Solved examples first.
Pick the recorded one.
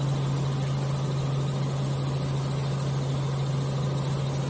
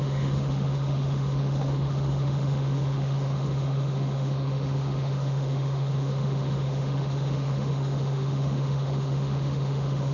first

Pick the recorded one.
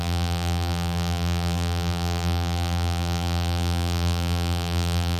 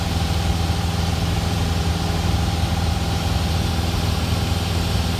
second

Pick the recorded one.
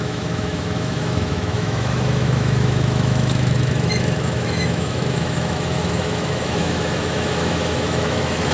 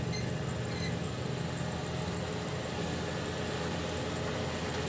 second